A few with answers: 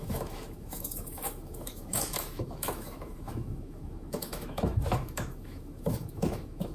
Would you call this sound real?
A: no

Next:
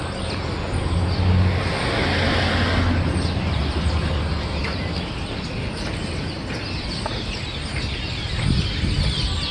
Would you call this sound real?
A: yes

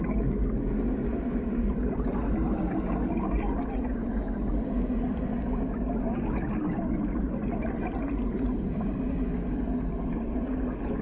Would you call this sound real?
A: yes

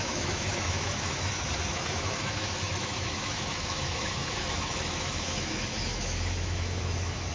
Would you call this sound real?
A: no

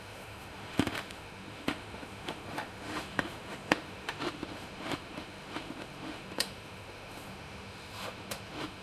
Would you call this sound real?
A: no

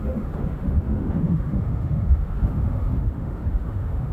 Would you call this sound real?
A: no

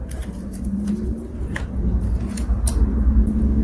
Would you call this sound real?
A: yes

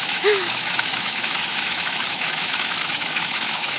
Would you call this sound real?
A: no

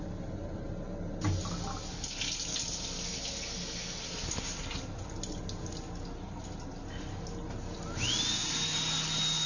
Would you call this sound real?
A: yes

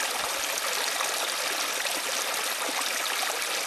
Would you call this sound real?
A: yes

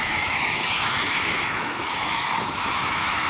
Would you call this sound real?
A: no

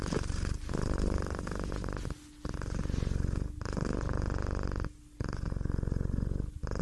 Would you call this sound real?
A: yes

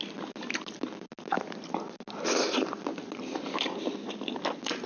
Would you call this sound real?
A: yes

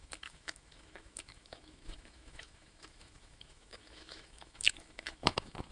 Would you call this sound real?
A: no